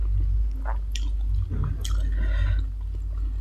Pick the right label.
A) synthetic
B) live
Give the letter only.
B